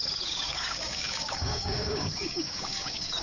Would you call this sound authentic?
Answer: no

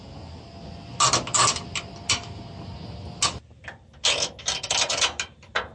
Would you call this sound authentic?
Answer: yes